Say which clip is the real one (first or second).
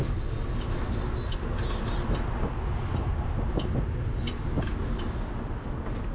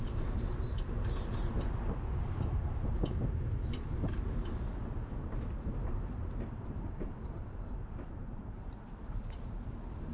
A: first